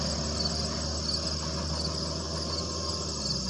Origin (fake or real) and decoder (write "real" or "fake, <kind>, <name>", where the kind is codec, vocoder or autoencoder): real